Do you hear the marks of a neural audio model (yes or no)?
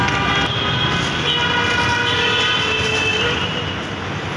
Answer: no